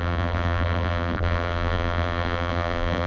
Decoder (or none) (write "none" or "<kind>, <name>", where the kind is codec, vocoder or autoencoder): vocoder, BigVGAN v2